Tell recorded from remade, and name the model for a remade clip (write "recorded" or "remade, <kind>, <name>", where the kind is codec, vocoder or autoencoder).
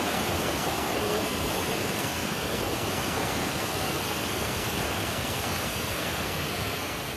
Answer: remade, codec, SNAC